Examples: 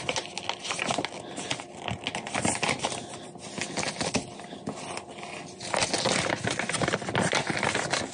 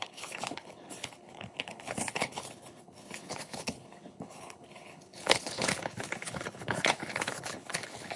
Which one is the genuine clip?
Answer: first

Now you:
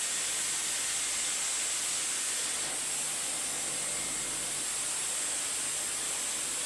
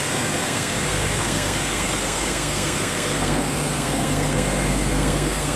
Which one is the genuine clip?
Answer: first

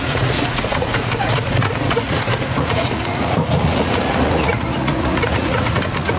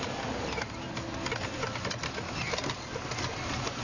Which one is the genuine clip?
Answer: second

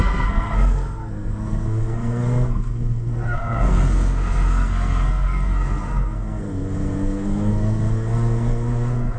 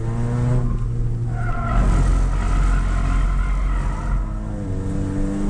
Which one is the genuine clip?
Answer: second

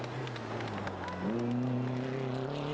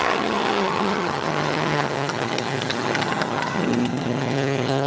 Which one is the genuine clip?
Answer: first